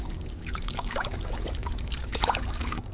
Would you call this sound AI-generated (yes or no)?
yes